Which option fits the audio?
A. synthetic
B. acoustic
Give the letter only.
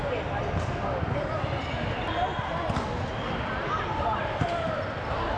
B